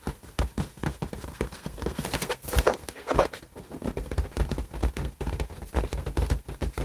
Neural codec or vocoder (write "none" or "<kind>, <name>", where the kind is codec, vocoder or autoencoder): codec, SNAC